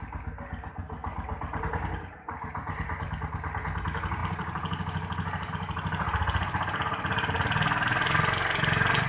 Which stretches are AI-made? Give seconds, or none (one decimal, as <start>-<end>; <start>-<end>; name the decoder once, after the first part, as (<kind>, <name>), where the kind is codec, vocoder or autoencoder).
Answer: none